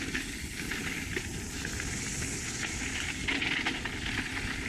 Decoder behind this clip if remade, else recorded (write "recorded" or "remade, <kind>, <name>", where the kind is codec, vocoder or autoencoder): recorded